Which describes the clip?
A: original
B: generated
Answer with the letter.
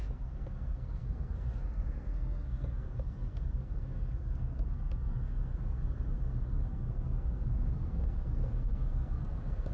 B